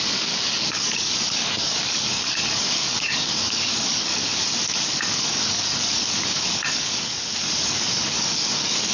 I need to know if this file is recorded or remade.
remade